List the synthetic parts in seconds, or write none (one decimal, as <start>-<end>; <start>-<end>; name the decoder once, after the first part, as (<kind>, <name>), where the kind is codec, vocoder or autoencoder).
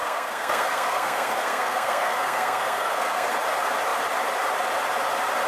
0.0-3.3 (codec, SNAC)